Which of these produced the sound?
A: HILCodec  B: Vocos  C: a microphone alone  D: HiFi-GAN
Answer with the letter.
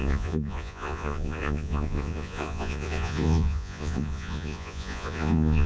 B